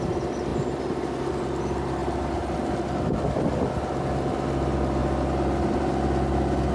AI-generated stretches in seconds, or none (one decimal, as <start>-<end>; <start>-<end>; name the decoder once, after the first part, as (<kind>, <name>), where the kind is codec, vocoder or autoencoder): none